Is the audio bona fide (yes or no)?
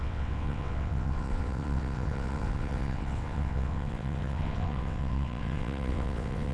no